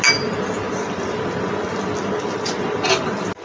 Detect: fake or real real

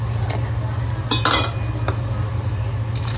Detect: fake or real real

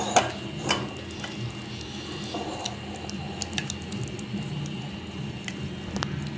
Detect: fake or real real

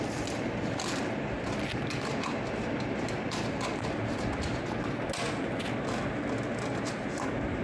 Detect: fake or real real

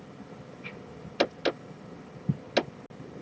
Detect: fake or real real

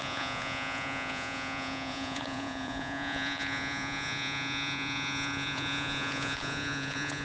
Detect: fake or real fake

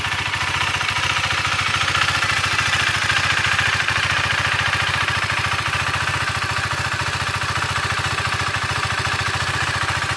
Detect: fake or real real